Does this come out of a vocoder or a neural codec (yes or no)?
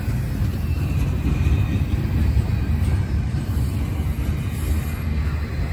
no